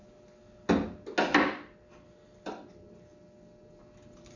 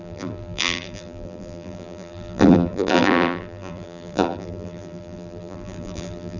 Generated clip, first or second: second